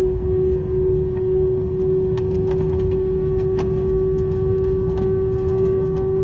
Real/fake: fake